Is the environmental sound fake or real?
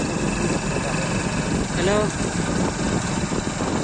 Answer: real